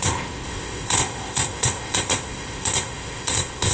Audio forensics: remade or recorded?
remade